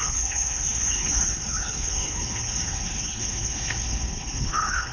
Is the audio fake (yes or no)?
yes